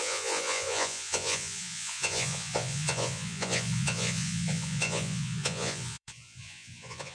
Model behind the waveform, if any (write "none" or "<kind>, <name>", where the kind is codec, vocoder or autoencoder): vocoder, Vocos